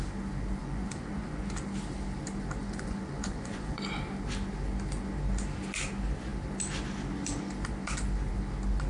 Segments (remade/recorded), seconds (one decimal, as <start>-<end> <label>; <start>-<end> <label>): 0.0-0.6 recorded; 0.6-1.5 remade; 1.5-2.6 recorded; 2.6-3.8 remade; 3.8-8.9 recorded